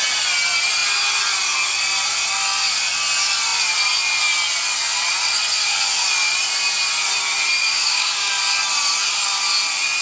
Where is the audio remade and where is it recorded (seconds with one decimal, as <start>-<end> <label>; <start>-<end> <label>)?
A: 0.0-7.6 recorded; 7.6-8.3 remade; 8.3-10.0 recorded

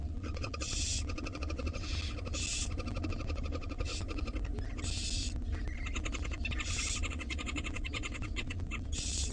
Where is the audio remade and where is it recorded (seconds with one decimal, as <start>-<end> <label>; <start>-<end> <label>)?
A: 0.0-1.9 remade; 1.9-3.1 recorded; 3.1-3.9 remade; 3.9-7.1 recorded; 7.1-9.3 remade

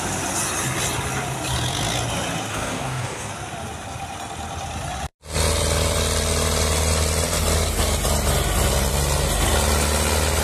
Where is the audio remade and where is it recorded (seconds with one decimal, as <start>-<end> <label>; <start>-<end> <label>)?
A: 0.0-2.5 recorded; 2.5-3.3 remade; 3.3-10.4 recorded

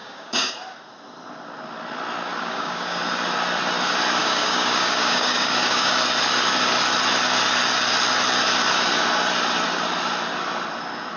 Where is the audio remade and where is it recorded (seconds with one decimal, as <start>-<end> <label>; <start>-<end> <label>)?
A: 0.0-0.5 remade; 0.5-2.4 recorded; 2.4-3.0 remade; 3.0-4.2 recorded; 4.2-5.9 remade; 5.9-11.2 recorded

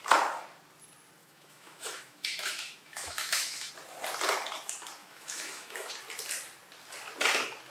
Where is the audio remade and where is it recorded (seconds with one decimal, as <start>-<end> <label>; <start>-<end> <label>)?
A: 0.0-1.2 recorded; 1.2-3.7 remade; 3.7-5.0 recorded; 5.0-5.9 remade; 5.9-7.7 recorded

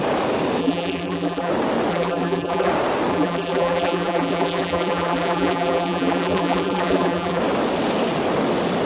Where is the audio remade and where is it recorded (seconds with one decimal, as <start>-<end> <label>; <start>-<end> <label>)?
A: 0.0-0.6 recorded; 0.6-1.5 remade; 1.5-1.9 recorded; 1.9-2.7 remade; 2.7-3.1 recorded; 3.1-7.4 remade; 7.4-8.9 recorded